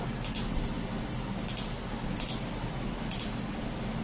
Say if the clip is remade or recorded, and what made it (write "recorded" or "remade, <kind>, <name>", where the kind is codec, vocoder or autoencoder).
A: recorded